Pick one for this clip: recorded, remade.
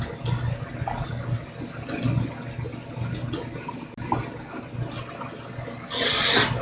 recorded